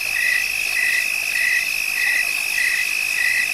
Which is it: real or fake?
real